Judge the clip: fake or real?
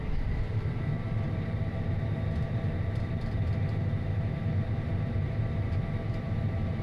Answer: fake